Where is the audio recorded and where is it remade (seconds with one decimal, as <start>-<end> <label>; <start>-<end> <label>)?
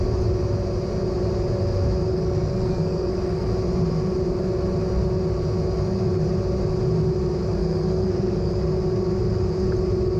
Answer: 0.0-2.1 recorded; 2.1-3.5 remade; 3.5-7.6 recorded; 7.6-8.6 remade; 8.6-10.2 recorded